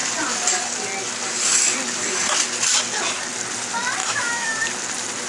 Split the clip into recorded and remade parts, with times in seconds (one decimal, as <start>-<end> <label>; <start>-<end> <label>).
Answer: 0.0-4.0 recorded; 4.0-4.6 remade; 4.6-5.3 recorded